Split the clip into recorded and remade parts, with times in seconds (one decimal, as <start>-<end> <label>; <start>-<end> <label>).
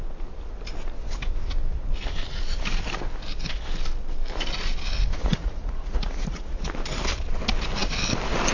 0.0-5.2 recorded; 5.2-6.7 remade; 6.7-8.5 recorded